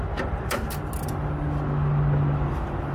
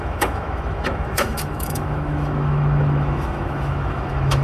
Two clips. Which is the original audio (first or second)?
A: first